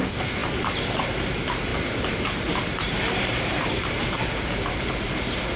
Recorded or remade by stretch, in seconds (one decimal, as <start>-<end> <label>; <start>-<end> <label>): 0.0-0.4 recorded; 0.4-1.1 remade; 1.1-1.7 recorded; 1.7-5.1 remade; 5.1-5.6 recorded

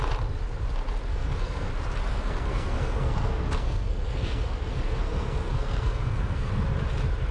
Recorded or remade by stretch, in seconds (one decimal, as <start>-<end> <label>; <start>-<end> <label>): 0.0-1.1 recorded; 1.1-1.7 remade; 1.7-2.1 recorded; 2.1-6.5 remade; 6.5-7.3 recorded